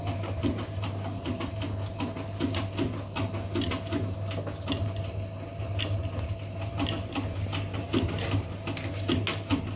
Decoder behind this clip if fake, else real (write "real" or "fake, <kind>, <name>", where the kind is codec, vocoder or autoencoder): real